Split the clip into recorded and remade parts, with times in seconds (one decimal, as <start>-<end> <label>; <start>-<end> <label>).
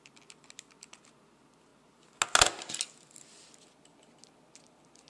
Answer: 0.0-5.1 recorded